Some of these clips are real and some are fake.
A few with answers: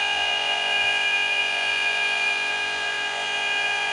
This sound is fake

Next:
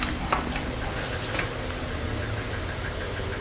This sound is real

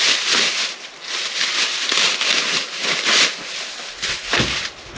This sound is real